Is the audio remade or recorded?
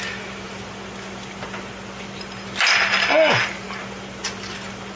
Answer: recorded